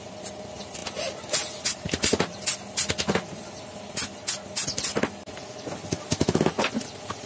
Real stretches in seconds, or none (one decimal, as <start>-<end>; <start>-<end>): 0.0-7.3